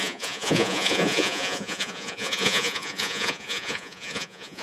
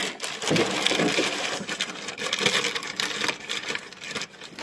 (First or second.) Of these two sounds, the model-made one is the first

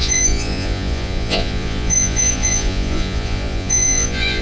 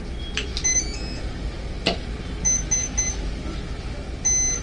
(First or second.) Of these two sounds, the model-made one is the first